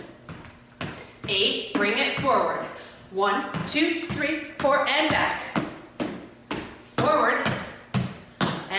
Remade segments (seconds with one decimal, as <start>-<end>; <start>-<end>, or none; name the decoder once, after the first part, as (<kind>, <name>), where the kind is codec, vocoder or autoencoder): none